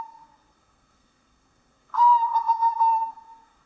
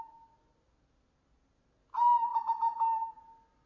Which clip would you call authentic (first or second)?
second